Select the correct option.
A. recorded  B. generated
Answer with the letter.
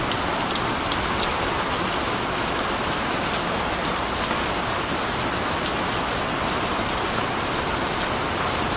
A